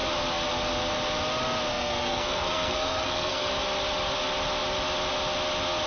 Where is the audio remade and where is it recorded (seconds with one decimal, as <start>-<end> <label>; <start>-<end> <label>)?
0.0-1.7 recorded; 1.7-3.5 remade; 3.5-5.9 recorded